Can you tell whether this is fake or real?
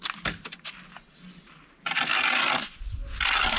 real